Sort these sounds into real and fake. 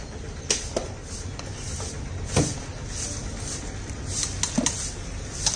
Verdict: real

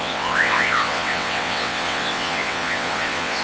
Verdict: fake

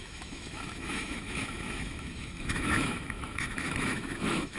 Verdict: fake